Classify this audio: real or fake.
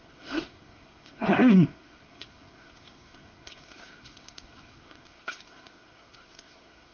fake